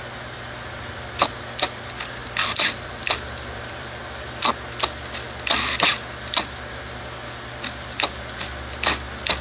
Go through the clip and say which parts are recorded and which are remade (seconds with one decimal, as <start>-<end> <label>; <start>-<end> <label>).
0.0-2.2 recorded; 2.2-4.0 remade; 4.0-9.4 recorded